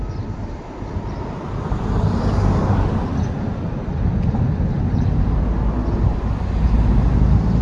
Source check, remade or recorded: recorded